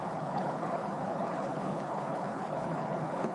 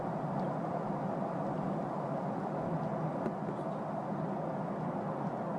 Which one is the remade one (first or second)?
first